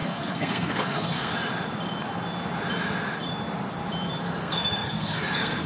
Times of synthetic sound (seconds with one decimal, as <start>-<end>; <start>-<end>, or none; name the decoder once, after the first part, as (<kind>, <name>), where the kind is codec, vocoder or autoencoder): 0.0-1.3 (codec, SNAC); 4.4-5.7